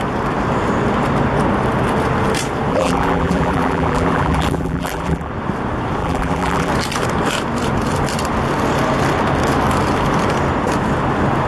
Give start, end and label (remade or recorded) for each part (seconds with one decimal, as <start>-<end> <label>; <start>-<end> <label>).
0.0-2.7 recorded; 2.7-5.3 remade; 5.3-6.0 recorded; 6.0-6.7 remade; 6.7-11.5 recorded